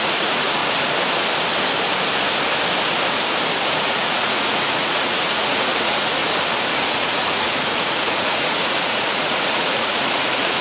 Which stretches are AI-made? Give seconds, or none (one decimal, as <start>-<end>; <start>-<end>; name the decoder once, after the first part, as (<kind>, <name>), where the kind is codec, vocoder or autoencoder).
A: 0.0-0.6 (vocoder, Vocos); 3.7-6.2; 6.9-10.6